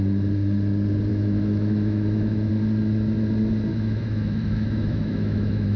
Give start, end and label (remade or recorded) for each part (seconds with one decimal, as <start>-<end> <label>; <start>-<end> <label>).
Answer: 0.0-1.1 recorded; 1.1-2.5 remade; 2.5-3.7 recorded; 3.7-5.8 remade